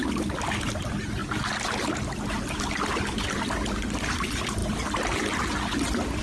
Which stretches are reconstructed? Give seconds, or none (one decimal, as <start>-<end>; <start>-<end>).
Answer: none